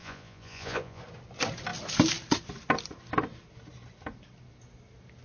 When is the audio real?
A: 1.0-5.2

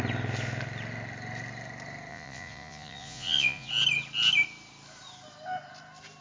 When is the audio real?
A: 0.0-2.1; 3.7-6.2

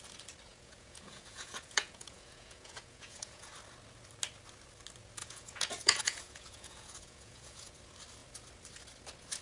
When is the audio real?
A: 0.0-0.5; 3.5-5.2; 7.7-9.4

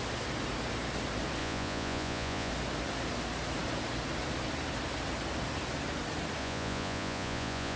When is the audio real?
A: 0.0-1.4; 2.5-6.4

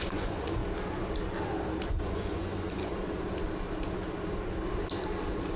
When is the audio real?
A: 0.6-1.9; 2.9-5.6

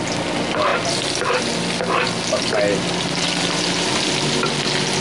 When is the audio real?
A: 0.0-5.0

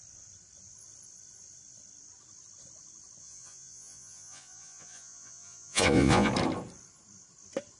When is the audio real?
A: 0.0-3.2; 6.3-7.8

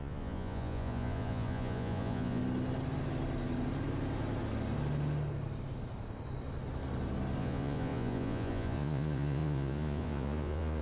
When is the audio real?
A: 2.4-7.4